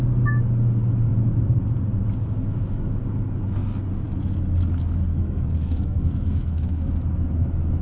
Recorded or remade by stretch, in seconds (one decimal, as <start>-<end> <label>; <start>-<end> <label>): 0.0-5.1 recorded; 5.1-6.9 remade; 6.9-7.8 recorded